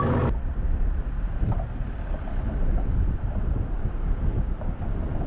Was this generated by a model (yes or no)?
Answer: no